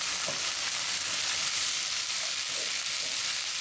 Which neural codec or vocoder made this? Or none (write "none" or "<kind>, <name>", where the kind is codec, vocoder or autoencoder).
none